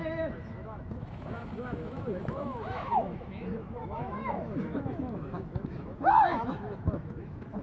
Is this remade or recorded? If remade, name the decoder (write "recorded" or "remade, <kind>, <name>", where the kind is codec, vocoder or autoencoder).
remade, autoencoder, DAC-VAE